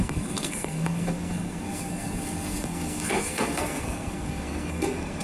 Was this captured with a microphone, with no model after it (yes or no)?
no